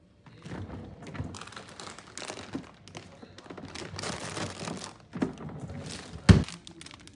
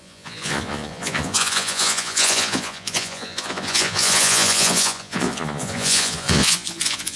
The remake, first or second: second